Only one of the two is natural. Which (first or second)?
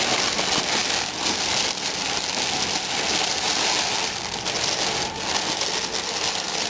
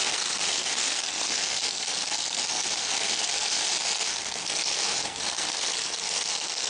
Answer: first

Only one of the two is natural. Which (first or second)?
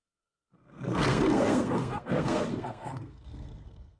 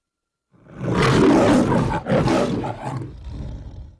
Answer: second